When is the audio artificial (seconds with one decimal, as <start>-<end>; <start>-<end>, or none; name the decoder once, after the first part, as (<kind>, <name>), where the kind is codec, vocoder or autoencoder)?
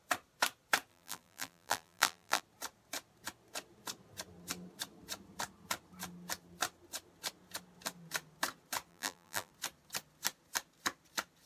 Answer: 0.9-2.4 (vocoder, BigVGAN v2); 8.9-9.5